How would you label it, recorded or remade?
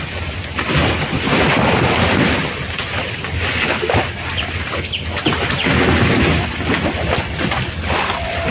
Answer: recorded